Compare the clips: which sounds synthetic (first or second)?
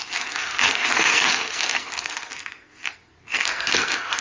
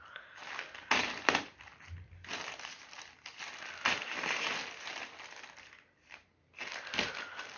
first